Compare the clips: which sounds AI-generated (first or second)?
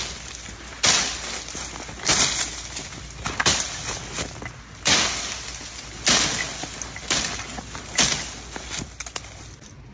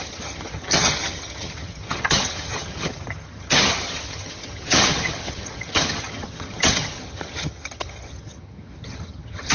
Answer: second